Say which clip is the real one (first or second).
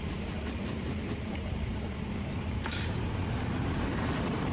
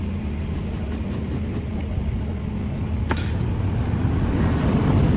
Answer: second